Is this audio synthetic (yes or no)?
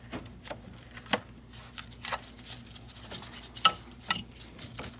no